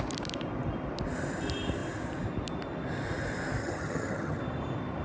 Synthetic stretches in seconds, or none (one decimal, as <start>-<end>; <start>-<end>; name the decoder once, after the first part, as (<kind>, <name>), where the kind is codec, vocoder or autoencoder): 3.6-4.4 (vocoder, HiFi-GAN)